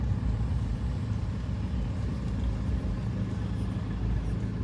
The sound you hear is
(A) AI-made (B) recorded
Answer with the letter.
B